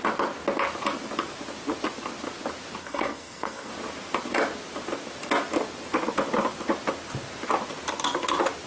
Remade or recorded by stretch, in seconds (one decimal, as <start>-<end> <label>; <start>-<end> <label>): 0.0-2.8 recorded; 2.8-3.7 remade; 3.7-8.7 recorded